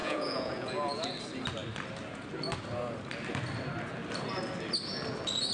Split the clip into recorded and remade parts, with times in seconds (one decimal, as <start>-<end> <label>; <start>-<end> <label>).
0.0-1.2 remade; 1.2-5.5 recorded